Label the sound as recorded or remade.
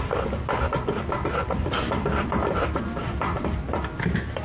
recorded